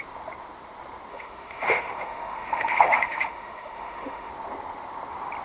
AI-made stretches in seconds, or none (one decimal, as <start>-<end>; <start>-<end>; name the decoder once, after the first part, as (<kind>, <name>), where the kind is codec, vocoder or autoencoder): 1.1-4.3 (autoencoder, DAC-VAE)